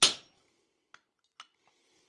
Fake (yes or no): no